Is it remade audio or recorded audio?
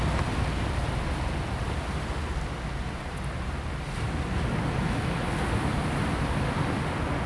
recorded